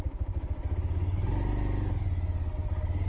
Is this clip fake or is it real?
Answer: real